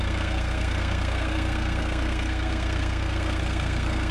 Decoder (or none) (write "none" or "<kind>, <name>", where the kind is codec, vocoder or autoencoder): codec, SNAC